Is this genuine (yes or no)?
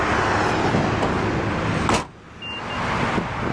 yes